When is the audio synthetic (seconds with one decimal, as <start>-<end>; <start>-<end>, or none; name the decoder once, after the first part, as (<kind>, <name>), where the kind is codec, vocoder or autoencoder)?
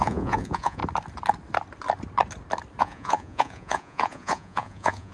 0.0-0.8 (vocoder, Vocos); 2.8-5.1